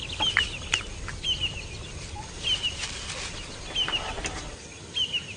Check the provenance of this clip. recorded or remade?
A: recorded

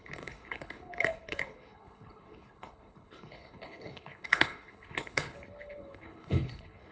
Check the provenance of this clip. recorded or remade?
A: remade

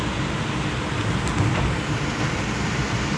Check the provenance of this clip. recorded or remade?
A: recorded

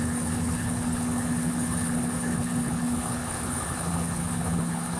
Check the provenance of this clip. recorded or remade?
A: remade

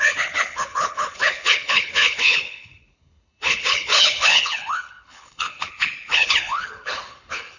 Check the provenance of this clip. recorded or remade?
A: remade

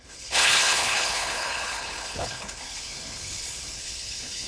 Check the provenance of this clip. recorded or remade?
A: remade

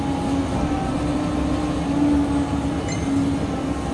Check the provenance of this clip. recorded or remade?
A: recorded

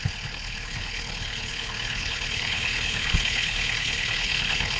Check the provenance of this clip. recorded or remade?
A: remade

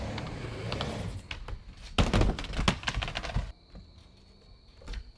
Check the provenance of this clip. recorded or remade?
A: recorded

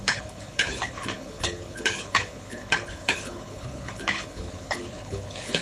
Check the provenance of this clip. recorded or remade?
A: remade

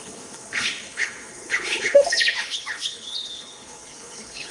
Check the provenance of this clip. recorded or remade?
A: remade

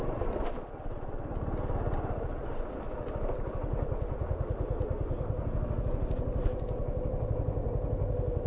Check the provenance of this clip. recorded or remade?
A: recorded